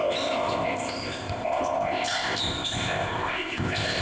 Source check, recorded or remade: remade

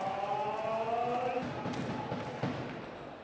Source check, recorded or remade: recorded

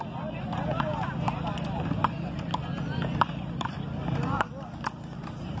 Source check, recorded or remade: recorded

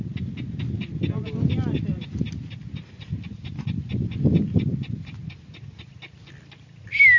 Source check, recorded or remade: recorded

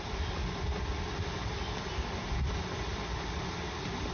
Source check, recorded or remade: recorded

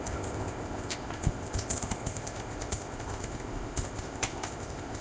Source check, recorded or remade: remade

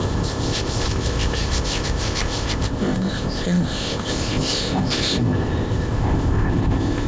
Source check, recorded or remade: remade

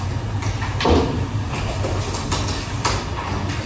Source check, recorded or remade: recorded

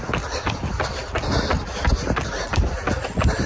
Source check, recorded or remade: recorded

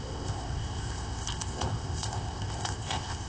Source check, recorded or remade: remade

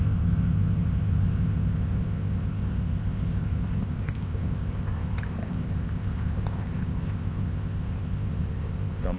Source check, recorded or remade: remade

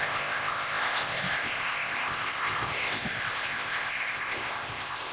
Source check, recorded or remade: remade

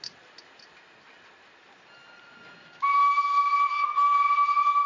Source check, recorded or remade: recorded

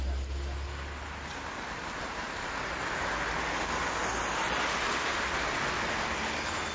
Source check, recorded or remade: recorded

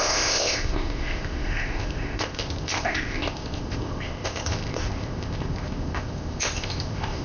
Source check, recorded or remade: remade